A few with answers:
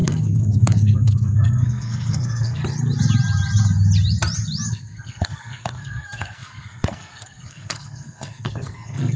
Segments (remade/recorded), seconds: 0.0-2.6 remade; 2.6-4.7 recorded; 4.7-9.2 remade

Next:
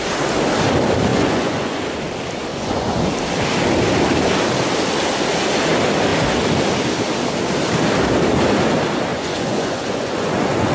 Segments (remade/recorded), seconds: 0.0-1.1 recorded; 1.1-1.8 remade; 1.8-2.5 recorded; 2.5-3.1 remade; 3.1-9.1 recorded; 9.1-10.7 remade

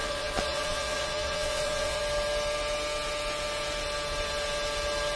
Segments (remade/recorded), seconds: 0.0-2.0 remade; 2.0-5.2 recorded